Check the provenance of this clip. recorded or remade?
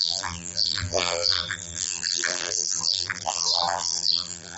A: remade